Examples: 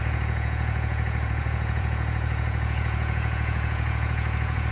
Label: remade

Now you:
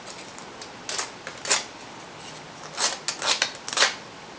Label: recorded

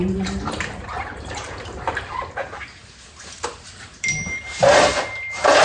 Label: remade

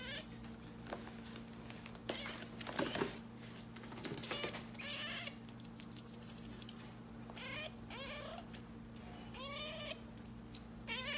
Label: recorded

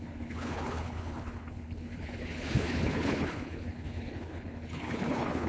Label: remade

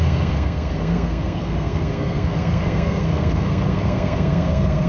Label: remade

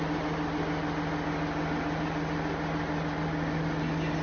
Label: recorded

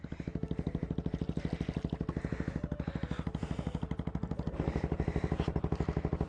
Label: recorded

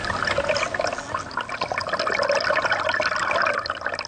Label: recorded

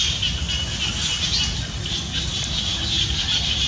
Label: recorded